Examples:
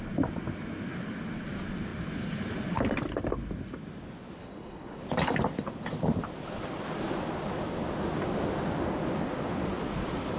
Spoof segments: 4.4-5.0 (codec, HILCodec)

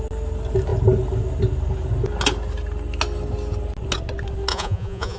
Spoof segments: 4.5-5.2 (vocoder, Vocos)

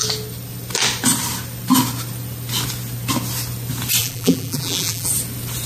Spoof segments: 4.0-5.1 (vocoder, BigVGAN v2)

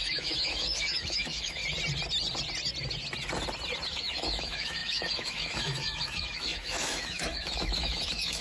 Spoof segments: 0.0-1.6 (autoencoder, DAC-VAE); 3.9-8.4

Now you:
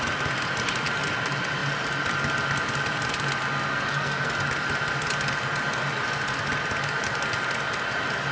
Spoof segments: 3.7-4.3 (codec, SNAC)

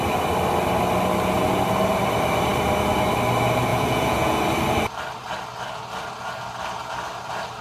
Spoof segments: 3.7-4.4 (vocoder, Vocos)

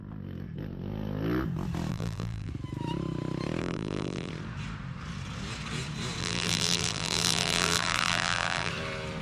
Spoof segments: 1.9-2.5 (vocoder, BigVGAN v2); 3.6-4.3; 6.2-8.7